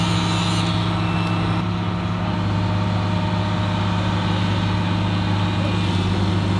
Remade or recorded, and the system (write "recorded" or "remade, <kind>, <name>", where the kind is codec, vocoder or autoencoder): recorded